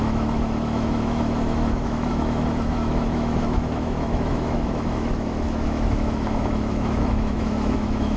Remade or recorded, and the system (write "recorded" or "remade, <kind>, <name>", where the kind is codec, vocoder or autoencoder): remade, autoencoder, DAC-VAE